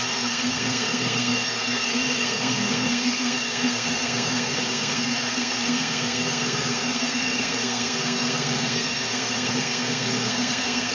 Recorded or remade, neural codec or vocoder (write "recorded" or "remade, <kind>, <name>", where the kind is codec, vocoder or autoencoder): remade, codec, SNAC